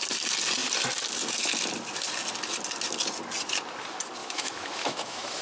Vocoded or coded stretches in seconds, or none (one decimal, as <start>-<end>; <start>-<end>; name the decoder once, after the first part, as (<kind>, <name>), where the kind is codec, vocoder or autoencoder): 4.2-5.4 (autoencoder, DAC-VAE)